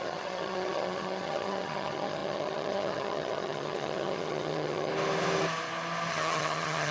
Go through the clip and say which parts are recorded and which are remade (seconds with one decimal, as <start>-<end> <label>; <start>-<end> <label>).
0.0-4.9 remade; 4.9-6.1 recorded; 6.1-6.9 remade